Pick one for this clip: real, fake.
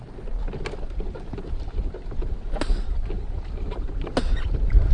real